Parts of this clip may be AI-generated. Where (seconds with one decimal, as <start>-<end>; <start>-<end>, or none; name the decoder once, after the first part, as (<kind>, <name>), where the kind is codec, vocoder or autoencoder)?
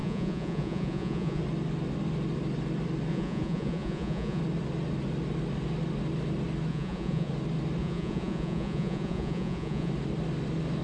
0.0-1.4 (vocoder, Vocos); 3.1-4.4; 6.7-7.3; 7.8-9.9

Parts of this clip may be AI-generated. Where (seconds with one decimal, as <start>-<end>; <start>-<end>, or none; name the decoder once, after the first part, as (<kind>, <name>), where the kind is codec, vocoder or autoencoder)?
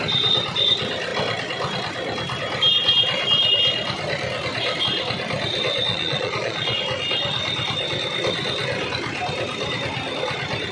5.9-6.8 (vocoder, Vocos)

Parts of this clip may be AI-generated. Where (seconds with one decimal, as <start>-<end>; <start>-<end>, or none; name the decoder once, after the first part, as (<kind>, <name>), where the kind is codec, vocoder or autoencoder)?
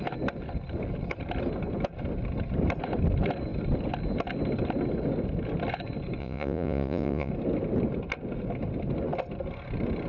6.2-7.3 (vocoder, Vocos)